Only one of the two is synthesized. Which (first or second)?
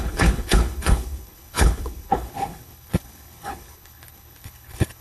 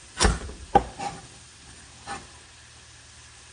first